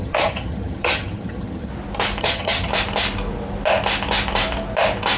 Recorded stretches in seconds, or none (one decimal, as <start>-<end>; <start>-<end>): 1.7-2.2; 2.7-5.2